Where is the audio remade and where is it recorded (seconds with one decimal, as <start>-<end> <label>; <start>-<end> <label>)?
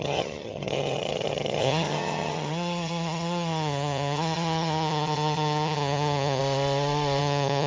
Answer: 0.0-6.4 remade; 6.4-7.2 recorded; 7.2-7.7 remade